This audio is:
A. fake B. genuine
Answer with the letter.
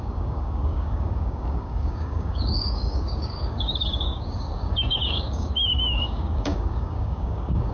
A